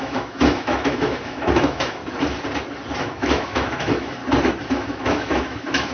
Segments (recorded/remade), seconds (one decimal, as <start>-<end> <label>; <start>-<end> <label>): 0.0-2.0 remade; 2.0-3.0 recorded; 3.0-4.2 remade; 4.2-4.7 recorded; 4.7-5.9 remade